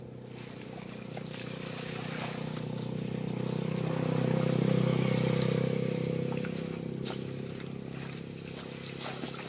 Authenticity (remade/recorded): recorded